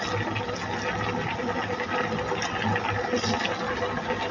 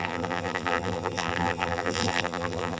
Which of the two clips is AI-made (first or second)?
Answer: second